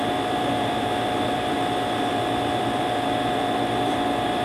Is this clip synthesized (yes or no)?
yes